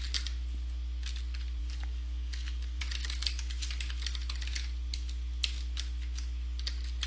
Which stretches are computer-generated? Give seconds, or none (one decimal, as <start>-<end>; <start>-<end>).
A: 1.6-2.8